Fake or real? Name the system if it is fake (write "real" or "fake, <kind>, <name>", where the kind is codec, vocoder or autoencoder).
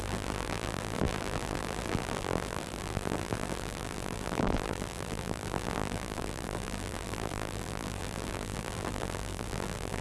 fake, vocoder, BigVGAN v2